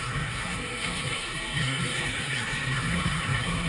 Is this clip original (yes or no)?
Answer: no